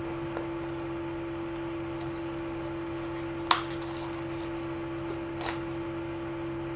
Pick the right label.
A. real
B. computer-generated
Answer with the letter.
A